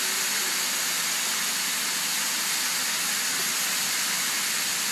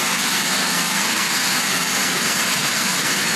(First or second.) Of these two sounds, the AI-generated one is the second